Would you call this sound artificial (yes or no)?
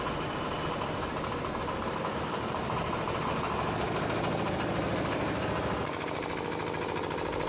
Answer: no